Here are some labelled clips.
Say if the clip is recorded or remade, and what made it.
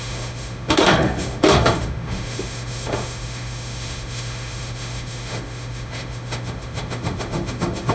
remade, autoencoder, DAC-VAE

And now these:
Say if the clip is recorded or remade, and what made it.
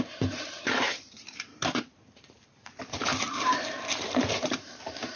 remade, vocoder, BigVGAN v2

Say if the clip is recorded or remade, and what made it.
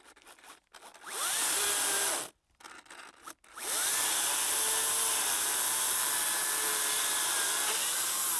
recorded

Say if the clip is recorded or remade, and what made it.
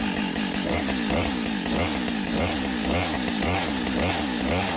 recorded